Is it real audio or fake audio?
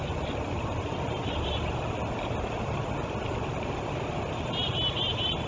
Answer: real